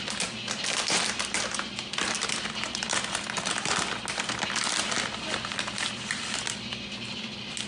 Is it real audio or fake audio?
real